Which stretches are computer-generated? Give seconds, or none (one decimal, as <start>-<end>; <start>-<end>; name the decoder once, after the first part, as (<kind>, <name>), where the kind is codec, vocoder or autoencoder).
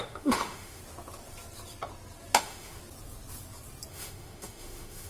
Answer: 0.0-0.8 (autoencoder, DAC-VAE); 2.4-2.8; 3.9-5.1